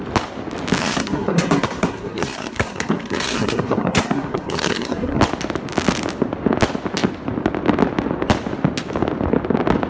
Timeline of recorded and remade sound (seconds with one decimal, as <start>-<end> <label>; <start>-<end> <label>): 0.0-0.8 recorded; 0.8-5.2 remade; 5.2-9.9 recorded